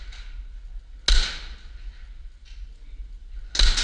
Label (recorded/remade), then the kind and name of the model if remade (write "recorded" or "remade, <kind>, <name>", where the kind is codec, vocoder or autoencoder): recorded